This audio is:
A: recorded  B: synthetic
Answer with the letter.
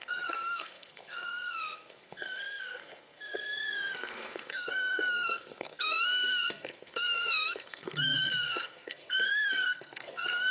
B